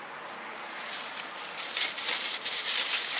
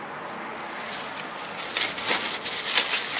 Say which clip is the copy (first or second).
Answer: first